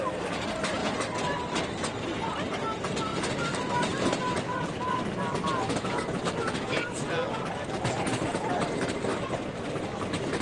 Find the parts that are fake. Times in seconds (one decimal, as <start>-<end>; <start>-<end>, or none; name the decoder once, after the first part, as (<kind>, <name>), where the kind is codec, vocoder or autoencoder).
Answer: 3.1-4.4 (vocoder, BigVGAN v2); 9.1-9.9